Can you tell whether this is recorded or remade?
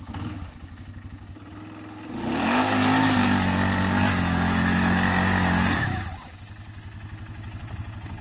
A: recorded